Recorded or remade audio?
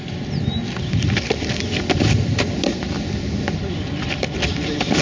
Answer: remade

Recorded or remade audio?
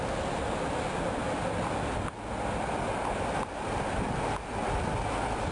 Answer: recorded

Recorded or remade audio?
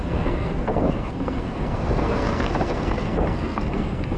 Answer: remade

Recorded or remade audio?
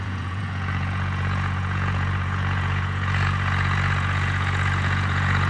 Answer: remade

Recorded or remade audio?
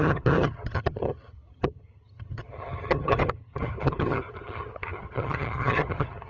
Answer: remade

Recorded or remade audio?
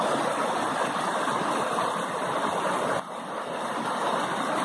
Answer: recorded